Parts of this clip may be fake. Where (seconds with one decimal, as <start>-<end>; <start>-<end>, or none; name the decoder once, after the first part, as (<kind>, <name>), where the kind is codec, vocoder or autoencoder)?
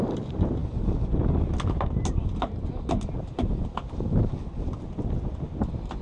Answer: none